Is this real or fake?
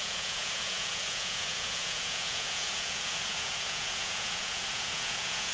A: fake